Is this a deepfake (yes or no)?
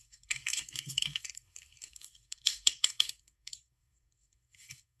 yes